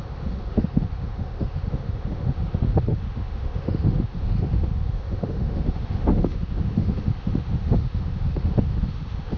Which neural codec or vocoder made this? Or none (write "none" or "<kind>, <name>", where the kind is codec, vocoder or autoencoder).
autoencoder, DAC-VAE